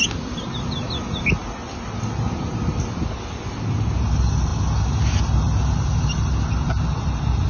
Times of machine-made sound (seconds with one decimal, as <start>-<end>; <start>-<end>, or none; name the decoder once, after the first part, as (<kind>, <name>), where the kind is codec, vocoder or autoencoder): none